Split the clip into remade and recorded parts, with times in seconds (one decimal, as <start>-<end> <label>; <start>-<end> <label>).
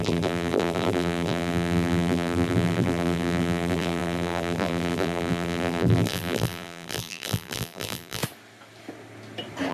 0.0-8.2 remade; 8.2-9.7 recorded